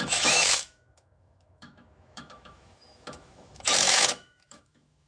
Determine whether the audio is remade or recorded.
remade